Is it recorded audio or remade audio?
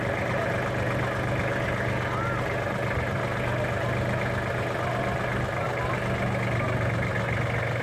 recorded